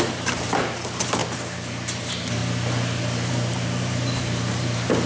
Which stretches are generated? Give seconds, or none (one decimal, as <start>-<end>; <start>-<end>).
0.0-1.2; 2.0-2.4; 3.3-5.1